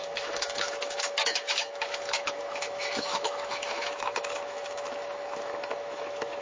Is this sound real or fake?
fake